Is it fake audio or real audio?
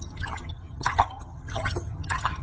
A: fake